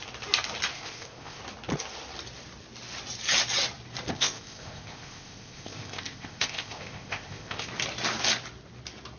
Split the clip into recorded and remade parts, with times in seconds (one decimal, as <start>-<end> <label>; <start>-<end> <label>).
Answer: 0.0-0.7 recorded; 0.7-1.4 remade; 1.4-4.1 recorded; 4.1-7.7 remade; 7.7-9.2 recorded

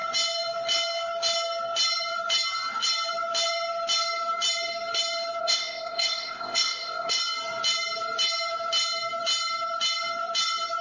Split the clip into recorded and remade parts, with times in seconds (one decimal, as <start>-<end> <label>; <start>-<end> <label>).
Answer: 0.0-5.4 recorded; 5.4-7.2 remade; 7.2-10.8 recorded

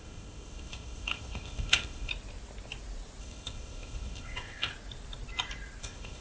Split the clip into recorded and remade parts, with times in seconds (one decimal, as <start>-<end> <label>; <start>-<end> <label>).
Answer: 0.0-2.1 remade; 2.1-3.2 recorded; 3.2-4.7 remade; 4.7-5.8 recorded; 5.8-6.2 remade

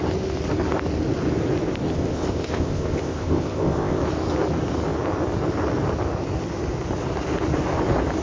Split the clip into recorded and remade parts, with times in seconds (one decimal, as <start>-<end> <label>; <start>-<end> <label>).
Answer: 0.0-1.9 recorded; 1.9-4.0 remade; 4.0-8.2 recorded

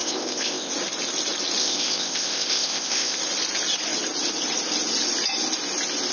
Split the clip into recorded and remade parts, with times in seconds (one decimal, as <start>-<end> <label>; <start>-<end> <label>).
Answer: 0.0-0.7 remade; 0.7-1.6 recorded; 1.6-3.2 remade; 3.2-6.1 recorded

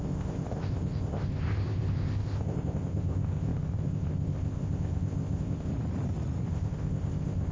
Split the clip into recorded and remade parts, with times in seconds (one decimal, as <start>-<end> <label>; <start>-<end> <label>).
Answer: 0.0-5.7 remade; 5.7-6.5 recorded; 6.5-7.5 remade

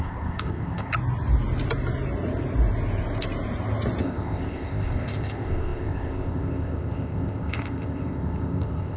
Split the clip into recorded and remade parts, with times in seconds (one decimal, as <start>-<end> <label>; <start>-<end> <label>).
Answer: 0.0-0.9 remade; 0.9-4.0 recorded; 4.0-9.0 remade